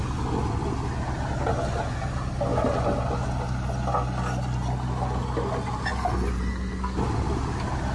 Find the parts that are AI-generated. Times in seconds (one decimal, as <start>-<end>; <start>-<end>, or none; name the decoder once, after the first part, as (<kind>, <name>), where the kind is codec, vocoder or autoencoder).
none